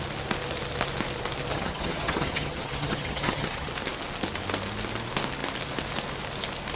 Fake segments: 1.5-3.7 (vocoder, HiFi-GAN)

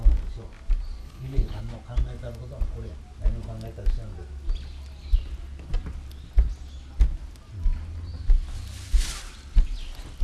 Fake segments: 1.0-1.6 (codec, HILCodec)

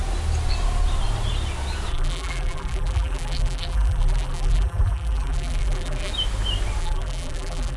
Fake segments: 1.9-6.1 (vocoder, BigVGAN v2); 6.8-7.8

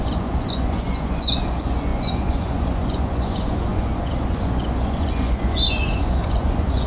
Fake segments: 0.0-6.9 (vocoder, Vocos)

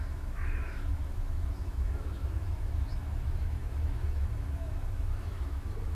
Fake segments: 0.0-5.9 (autoencoder, DAC-VAE)

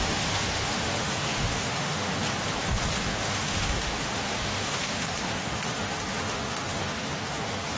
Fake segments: 0.0-2.1 (autoencoder, DAC-VAE); 2.9-7.8

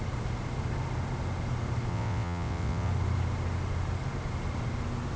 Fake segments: 1.9-2.9 (vocoder, WaveNeXt)

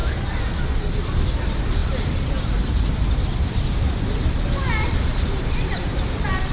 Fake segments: none